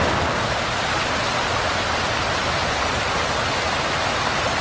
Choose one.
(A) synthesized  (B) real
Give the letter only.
B